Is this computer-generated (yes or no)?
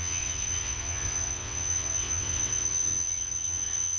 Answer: yes